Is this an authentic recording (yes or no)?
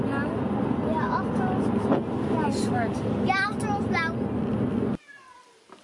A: yes